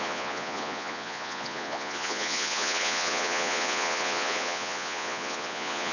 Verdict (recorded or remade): remade